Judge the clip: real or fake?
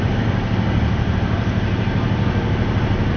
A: real